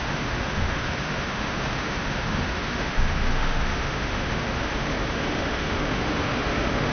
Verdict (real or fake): fake